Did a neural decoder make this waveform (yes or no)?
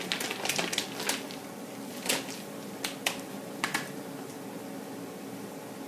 no